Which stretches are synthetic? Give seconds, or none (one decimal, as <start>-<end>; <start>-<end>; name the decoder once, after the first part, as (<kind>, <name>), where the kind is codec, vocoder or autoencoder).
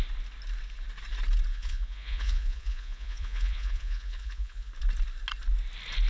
1.5-4.7 (vocoder, Vocos)